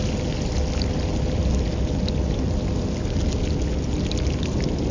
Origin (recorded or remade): recorded